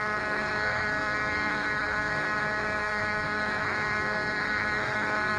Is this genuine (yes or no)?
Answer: no